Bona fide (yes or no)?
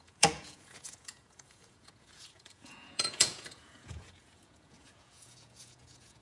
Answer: no